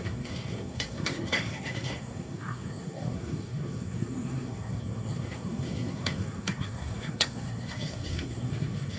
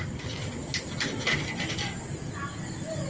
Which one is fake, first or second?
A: first